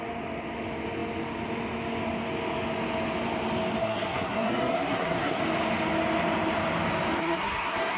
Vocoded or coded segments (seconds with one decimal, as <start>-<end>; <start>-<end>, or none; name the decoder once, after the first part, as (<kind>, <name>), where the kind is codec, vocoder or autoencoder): 3.8-5.4 (codec, SNAC); 7.2-8.0